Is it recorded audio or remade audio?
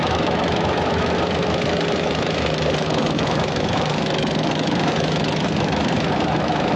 remade